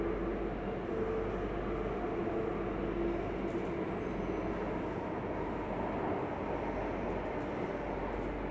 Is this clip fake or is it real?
real